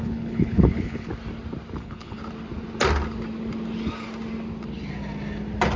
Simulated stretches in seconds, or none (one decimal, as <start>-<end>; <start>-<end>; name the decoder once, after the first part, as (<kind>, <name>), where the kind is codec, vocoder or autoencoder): 0.0-1.1 (codec, HILCodec); 1.8-2.2